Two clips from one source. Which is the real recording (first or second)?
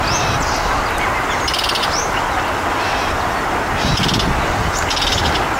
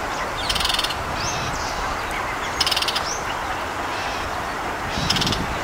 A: first